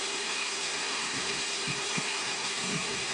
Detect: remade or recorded remade